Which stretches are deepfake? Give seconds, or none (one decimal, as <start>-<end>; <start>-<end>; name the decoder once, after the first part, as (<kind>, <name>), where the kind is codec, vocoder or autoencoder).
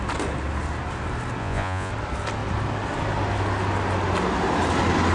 1.4-1.9 (vocoder, Vocos)